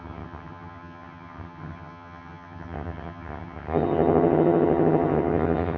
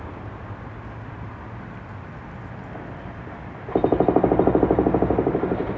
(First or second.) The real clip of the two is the second